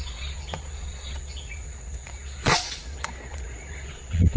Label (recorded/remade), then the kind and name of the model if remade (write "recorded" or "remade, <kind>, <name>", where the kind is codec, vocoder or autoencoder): remade, vocoder, Vocos